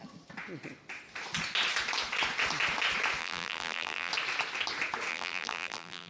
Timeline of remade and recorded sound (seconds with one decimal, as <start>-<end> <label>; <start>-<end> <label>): 0.0-3.2 recorded; 3.2-4.1 remade; 4.1-5.1 recorded; 5.1-6.1 remade